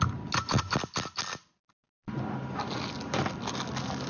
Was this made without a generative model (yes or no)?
yes